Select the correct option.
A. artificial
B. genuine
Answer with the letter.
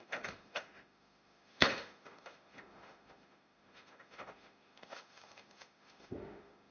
A